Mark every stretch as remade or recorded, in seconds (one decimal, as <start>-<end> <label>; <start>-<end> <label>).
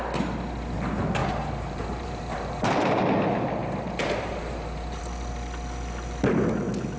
0.0-1.2 recorded; 1.2-3.0 remade; 3.0-3.6 recorded; 3.6-5.0 remade; 5.0-7.0 recorded